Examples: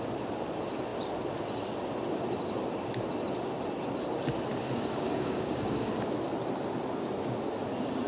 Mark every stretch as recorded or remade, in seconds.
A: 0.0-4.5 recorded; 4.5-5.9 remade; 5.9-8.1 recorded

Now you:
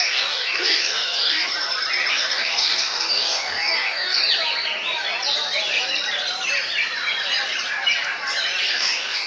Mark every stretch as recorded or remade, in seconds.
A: 0.0-1.5 remade; 1.5-2.1 recorded; 2.1-4.2 remade; 4.2-8.7 recorded; 8.7-9.3 remade

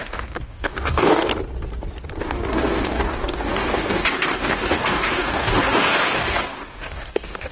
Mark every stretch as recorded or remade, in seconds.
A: 0.0-1.3 remade; 1.3-2.2 recorded; 2.2-7.5 remade